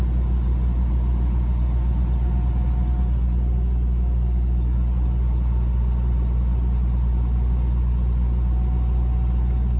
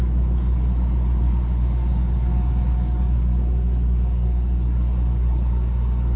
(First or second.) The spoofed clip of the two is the second